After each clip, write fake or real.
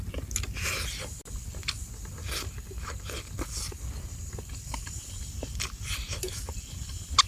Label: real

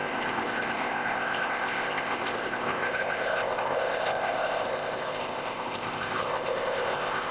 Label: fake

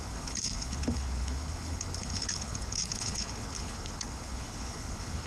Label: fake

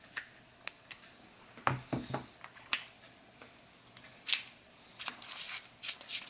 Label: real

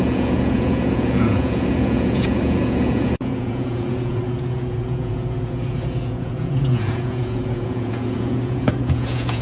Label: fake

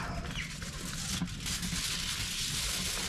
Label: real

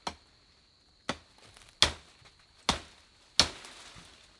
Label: real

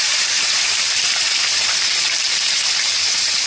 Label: fake